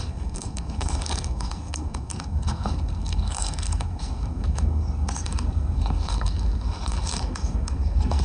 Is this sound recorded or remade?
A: remade